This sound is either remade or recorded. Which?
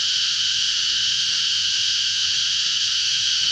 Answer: remade